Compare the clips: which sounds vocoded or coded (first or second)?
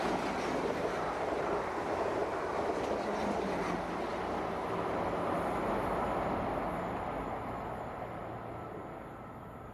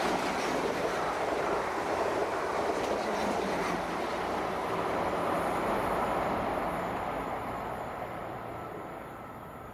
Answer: second